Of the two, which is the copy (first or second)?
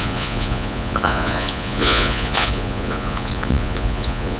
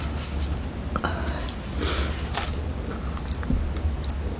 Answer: first